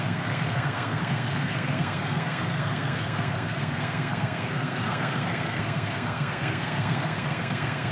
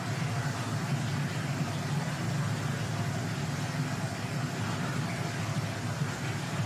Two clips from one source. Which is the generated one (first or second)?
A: first